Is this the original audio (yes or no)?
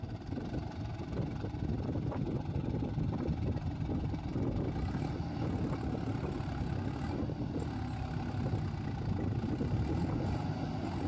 yes